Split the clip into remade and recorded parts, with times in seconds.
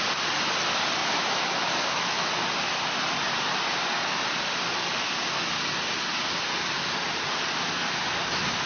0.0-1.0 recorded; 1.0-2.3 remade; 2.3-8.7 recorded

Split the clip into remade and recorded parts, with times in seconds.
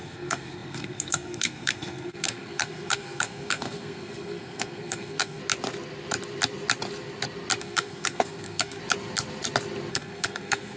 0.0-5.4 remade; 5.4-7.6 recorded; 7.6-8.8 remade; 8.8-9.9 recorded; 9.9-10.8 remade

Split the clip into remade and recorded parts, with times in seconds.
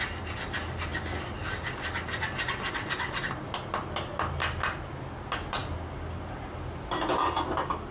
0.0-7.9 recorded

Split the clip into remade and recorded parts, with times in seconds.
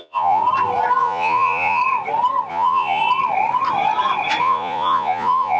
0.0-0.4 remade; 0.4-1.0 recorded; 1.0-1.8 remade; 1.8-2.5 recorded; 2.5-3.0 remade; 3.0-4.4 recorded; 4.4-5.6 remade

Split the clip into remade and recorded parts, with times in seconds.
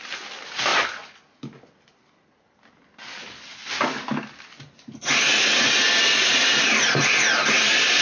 0.0-8.0 recorded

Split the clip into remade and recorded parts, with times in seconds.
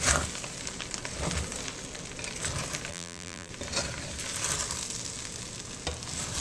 0.0-2.9 recorded; 2.9-3.5 remade; 3.5-6.4 recorded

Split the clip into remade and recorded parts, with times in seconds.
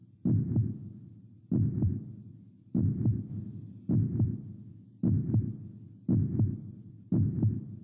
0.0-5.5 remade; 5.5-6.6 recorded; 6.6-7.8 remade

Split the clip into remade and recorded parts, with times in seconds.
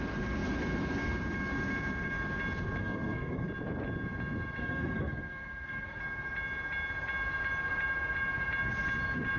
0.0-2.8 recorded; 2.8-3.4 remade; 3.4-4.6 recorded; 4.6-6.0 remade; 6.0-9.4 recorded